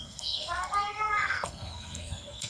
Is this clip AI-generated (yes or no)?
yes